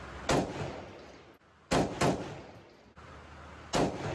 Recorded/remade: recorded